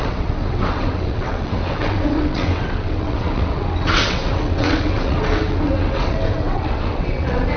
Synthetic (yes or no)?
yes